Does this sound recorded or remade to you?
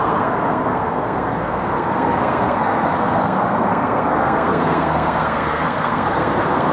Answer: remade